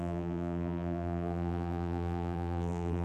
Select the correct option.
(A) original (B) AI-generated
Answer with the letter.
B